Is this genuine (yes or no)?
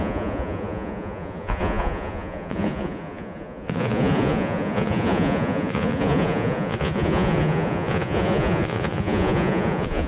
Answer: no